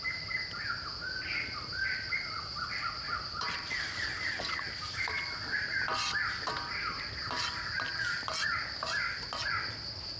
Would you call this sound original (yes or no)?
yes